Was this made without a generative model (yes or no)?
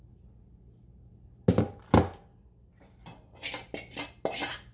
yes